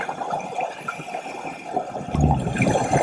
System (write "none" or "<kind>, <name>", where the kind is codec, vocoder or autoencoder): vocoder, BigVGAN v2